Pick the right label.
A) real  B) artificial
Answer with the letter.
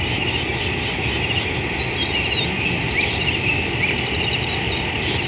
A